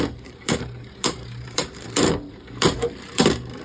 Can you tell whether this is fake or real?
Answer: fake